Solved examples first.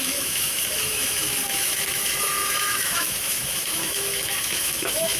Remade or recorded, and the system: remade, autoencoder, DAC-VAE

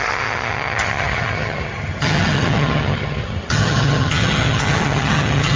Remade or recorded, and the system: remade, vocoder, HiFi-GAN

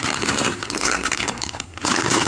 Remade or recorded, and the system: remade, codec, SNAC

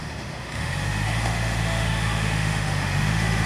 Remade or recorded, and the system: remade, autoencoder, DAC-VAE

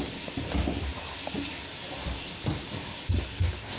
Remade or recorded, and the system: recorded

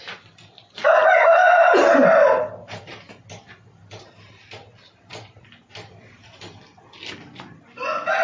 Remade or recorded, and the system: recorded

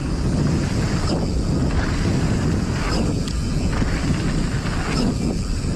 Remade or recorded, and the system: recorded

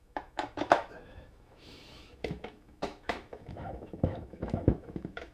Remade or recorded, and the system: remade, autoencoder, DAC-VAE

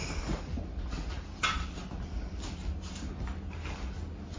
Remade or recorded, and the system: recorded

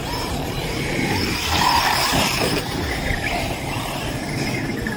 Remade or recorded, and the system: remade, vocoder, BigVGAN v2